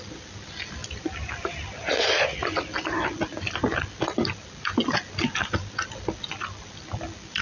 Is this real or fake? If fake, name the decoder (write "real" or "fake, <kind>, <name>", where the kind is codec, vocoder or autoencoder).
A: real